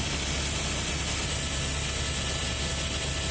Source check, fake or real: real